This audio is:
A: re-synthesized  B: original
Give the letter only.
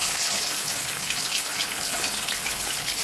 A